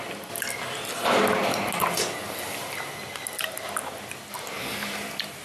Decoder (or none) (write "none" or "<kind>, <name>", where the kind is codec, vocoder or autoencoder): none